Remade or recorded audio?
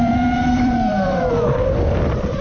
remade